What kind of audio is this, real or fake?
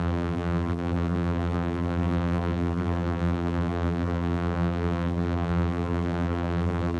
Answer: fake